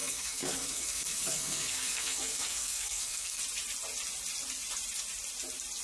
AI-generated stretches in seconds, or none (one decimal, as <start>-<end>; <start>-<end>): 0.0-3.4